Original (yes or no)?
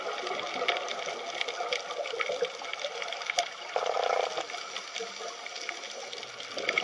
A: yes